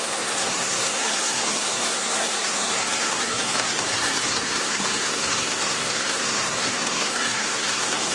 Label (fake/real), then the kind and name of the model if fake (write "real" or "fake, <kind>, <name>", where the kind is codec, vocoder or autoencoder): fake, codec, SNAC